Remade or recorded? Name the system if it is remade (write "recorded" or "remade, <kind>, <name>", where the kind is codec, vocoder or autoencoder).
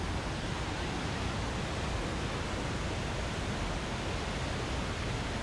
recorded